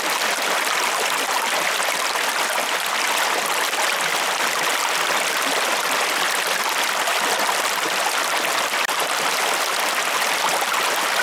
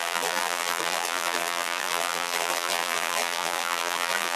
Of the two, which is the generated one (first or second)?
second